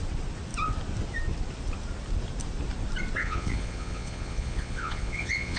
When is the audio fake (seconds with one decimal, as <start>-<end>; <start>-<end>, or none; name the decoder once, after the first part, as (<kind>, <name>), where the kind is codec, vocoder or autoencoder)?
3.2-5.6 (vocoder, Vocos)